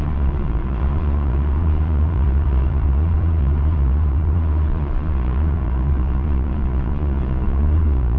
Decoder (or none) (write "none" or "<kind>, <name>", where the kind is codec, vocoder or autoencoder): vocoder, Vocos